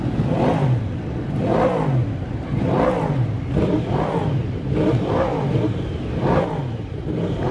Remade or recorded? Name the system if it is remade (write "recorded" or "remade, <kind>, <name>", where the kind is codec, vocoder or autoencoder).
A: remade, vocoder, BigVGAN v2